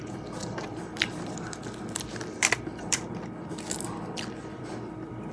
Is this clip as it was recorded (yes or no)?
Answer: no